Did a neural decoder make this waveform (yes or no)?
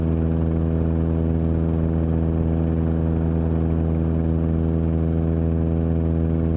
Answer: no